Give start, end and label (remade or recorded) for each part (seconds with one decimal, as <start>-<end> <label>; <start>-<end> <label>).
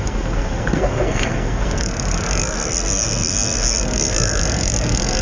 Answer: 0.0-5.2 remade